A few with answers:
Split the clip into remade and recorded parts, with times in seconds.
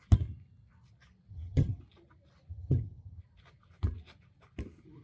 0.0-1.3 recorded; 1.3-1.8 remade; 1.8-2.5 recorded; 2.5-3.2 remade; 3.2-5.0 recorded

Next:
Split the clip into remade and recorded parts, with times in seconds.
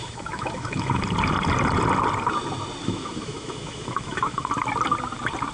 0.0-1.0 remade; 1.0-2.8 recorded; 2.8-4.5 remade; 4.5-5.5 recorded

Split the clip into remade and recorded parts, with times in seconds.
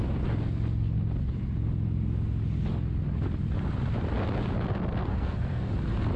0.0-5.0 recorded; 5.0-5.7 remade; 5.7-6.2 recorded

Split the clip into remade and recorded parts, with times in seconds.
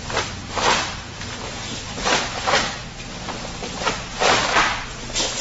0.0-5.4 recorded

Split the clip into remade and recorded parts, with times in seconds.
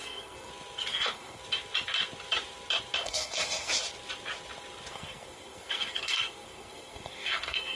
0.0-0.5 remade; 0.5-0.9 recorded; 0.9-1.4 remade; 1.4-3.0 recorded; 3.0-3.7 remade; 3.7-4.9 recorded; 4.9-7.8 remade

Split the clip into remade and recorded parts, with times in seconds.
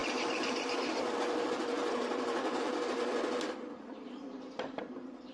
0.0-5.3 remade